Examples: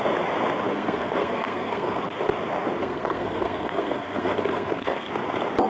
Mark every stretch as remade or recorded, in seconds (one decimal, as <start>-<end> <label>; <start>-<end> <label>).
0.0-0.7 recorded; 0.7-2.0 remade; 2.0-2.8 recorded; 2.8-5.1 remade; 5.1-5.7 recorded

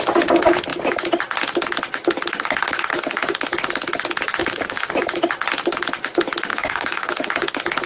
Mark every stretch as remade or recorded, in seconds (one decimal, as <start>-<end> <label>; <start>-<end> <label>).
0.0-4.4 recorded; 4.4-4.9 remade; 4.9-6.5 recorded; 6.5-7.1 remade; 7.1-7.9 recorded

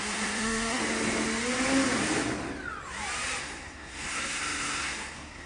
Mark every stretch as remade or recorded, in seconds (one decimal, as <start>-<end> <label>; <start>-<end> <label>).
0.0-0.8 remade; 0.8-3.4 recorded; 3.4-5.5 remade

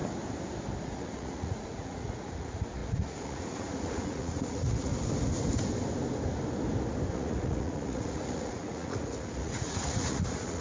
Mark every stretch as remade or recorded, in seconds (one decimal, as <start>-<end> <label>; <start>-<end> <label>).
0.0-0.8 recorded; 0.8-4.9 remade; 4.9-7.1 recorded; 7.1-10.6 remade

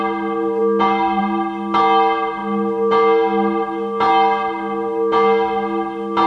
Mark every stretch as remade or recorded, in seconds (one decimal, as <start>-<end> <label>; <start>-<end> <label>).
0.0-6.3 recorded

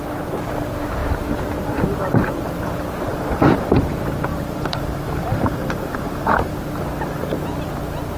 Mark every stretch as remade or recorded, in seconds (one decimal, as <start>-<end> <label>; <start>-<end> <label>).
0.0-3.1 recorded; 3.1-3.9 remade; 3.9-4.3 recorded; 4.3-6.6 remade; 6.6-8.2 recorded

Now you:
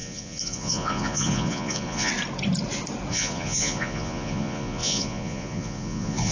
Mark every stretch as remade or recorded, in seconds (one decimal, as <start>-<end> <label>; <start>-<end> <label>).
0.0-2.1 remade; 2.1-3.1 recorded; 3.1-6.3 remade

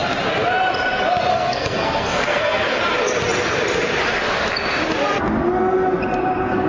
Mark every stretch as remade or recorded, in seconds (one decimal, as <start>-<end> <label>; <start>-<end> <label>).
0.0-1.3 recorded; 1.3-2.8 remade; 2.8-6.7 recorded